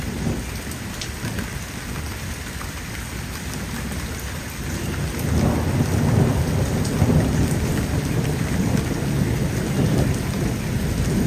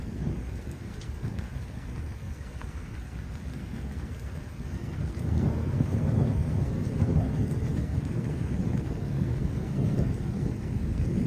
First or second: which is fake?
second